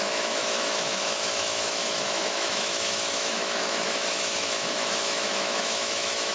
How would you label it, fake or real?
fake